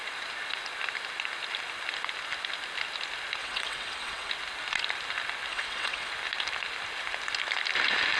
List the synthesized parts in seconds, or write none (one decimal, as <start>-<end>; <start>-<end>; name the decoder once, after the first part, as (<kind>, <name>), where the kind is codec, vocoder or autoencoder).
3.4-4.3 (vocoder, WaveNeXt); 5.5-6.1